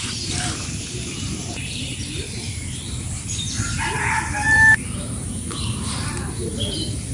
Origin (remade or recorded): remade